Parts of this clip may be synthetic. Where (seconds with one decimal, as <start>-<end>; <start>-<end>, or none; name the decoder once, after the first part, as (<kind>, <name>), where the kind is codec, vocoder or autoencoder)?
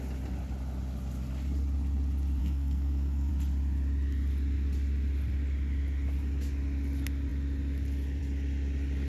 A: 2.4-3.3 (codec, SNAC)